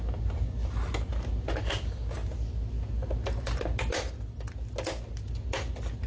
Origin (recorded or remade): recorded